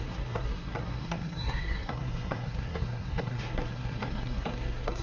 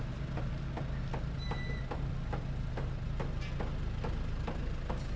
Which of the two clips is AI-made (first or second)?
first